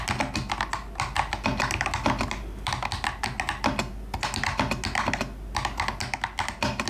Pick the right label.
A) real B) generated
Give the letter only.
A